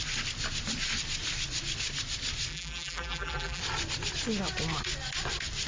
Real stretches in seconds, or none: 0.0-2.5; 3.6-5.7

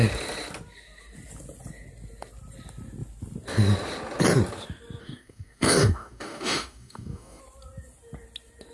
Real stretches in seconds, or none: 0.0-5.0; 7.4-8.7